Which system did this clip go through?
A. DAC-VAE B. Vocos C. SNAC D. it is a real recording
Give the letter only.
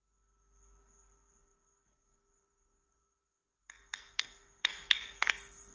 C